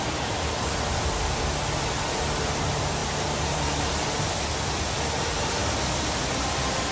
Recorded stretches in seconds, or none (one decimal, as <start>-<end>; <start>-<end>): 0.0-3.0; 4.1-6.9